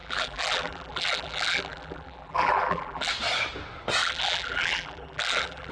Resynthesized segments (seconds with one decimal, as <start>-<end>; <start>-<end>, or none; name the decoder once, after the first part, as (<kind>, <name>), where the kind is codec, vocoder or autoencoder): 0.0-3.1 (vocoder, BigVGAN v2); 4.0-5.7